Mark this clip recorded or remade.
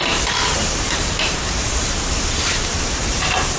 remade